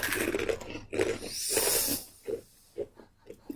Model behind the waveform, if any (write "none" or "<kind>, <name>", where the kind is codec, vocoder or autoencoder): none